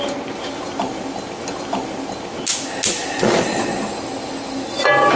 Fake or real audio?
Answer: real